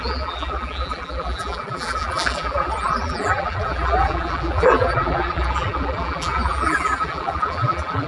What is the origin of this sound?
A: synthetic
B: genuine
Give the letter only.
A